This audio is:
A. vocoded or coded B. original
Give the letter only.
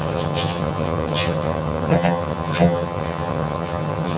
A